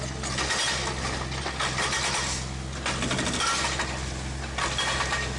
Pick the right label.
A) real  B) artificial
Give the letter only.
A